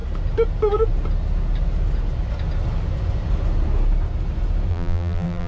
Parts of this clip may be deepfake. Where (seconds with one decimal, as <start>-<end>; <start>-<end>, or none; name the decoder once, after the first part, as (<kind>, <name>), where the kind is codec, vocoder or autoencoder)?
4.7-5.5 (vocoder, BigVGAN v2)